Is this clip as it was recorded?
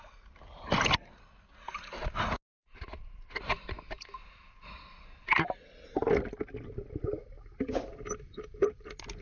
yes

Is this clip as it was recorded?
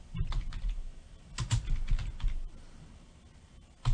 yes